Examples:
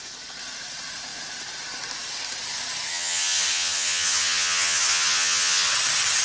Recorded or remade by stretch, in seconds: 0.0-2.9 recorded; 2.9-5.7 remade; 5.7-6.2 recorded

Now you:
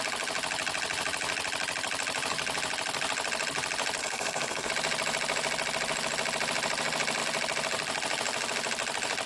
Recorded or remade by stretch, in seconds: 0.0-4.0 recorded; 4.0-4.7 remade; 4.7-9.3 recorded

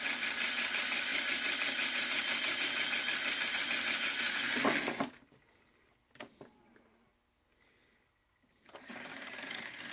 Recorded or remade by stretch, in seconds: 0.0-9.1 recorded; 9.1-9.9 remade

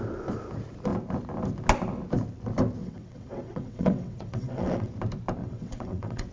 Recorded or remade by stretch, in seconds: 0.0-2.8 recorded; 2.8-4.9 remade; 4.9-5.4 recorded; 5.4-6.3 remade

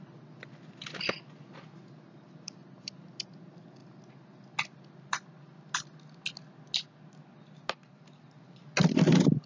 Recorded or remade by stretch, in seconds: 0.0-9.5 recorded

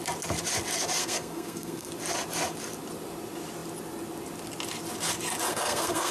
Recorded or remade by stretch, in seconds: 0.0-1.0 recorded; 1.0-1.9 remade; 1.9-5.5 recorded; 5.5-6.1 remade